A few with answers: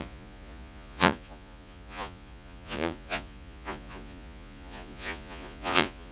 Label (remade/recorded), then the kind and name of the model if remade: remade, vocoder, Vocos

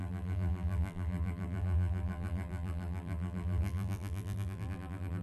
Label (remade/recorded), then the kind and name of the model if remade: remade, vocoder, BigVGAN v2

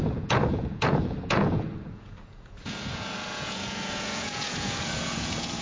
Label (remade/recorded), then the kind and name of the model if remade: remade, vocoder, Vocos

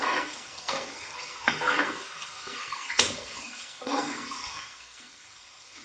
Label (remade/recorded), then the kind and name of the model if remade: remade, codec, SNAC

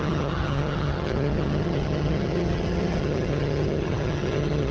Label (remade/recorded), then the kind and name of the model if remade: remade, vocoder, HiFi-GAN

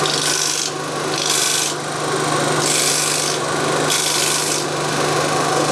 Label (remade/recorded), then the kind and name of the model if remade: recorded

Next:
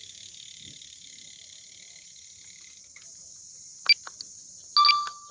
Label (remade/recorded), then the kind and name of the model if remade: recorded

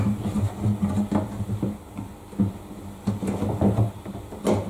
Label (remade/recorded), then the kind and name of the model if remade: recorded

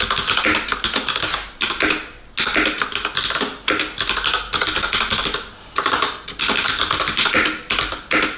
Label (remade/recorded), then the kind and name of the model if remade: recorded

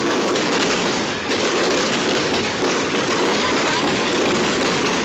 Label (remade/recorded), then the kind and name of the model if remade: remade, codec, DAC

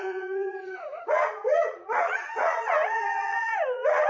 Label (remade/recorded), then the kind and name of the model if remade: remade, vocoder, Vocos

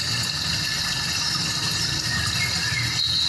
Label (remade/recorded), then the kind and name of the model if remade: recorded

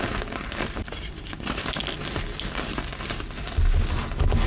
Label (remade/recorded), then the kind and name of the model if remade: recorded